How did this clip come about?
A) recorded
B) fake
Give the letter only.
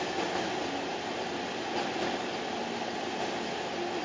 A